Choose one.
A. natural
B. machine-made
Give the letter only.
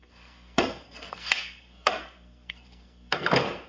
B